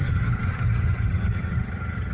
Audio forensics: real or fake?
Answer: fake